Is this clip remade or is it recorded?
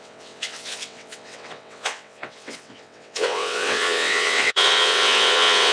remade